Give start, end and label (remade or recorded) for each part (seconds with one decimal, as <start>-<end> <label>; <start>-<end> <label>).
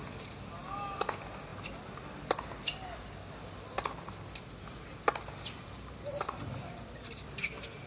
0.0-7.9 recorded